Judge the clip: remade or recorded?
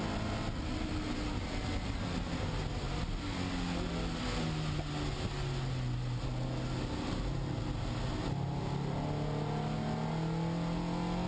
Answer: recorded